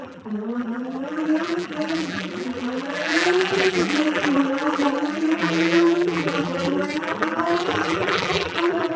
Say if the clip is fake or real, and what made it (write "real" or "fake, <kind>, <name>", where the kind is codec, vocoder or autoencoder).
fake, vocoder, BigVGAN v2